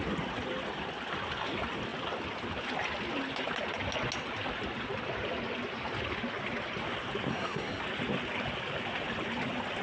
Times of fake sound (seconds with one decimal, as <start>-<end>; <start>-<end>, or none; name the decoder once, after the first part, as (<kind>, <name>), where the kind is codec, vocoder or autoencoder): 7.3-7.8 (codec, SNAC)